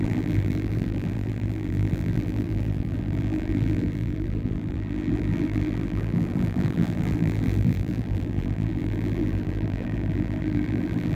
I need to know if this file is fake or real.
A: fake